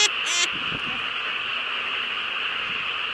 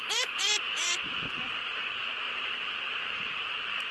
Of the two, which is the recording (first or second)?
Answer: first